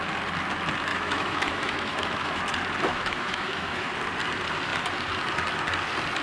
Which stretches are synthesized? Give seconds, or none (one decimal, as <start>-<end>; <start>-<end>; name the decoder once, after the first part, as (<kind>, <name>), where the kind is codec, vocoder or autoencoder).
0.9-2.4 (autoencoder, DAC-VAE); 2.9-3.9